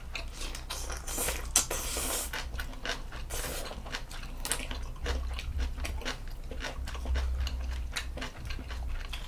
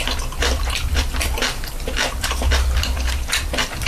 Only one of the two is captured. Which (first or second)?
first